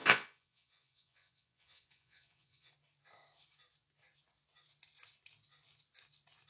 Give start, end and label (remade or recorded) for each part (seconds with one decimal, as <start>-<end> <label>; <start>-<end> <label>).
0.0-2.7 remade; 2.7-6.5 recorded